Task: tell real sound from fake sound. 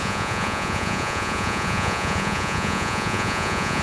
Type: fake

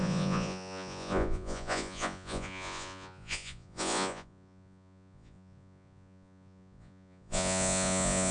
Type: fake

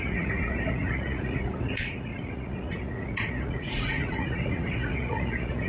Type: fake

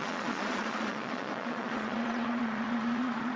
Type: fake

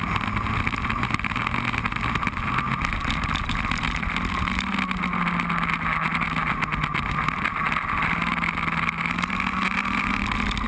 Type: real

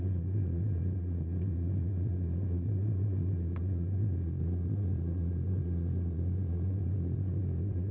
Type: fake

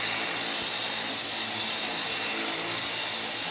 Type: real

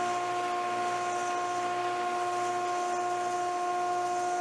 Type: real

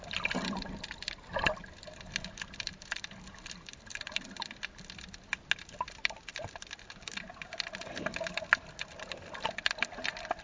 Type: real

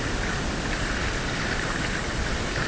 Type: real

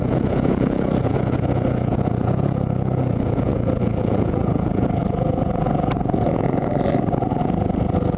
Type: fake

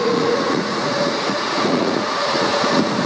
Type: fake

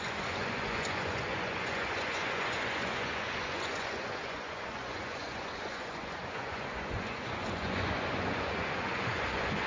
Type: fake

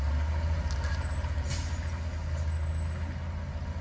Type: real